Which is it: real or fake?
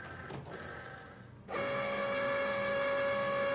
real